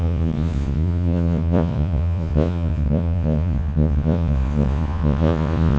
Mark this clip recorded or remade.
remade